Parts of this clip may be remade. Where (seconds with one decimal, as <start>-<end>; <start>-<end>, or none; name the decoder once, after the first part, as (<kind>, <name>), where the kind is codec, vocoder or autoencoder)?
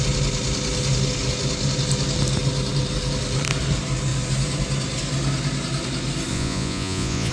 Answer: 6.3-7.3 (vocoder, Vocos)